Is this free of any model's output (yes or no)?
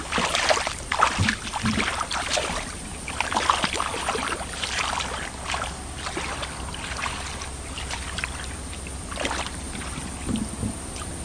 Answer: no